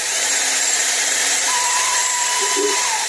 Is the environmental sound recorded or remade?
remade